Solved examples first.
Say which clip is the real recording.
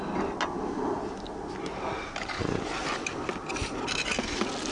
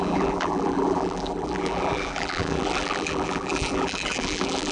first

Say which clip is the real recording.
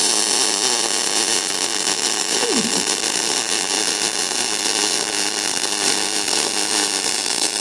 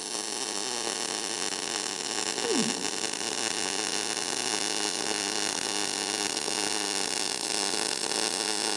second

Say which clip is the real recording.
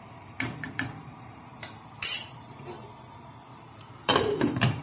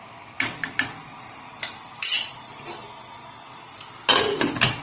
second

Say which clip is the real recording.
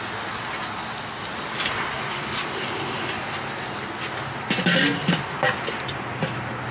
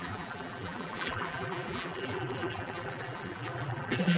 first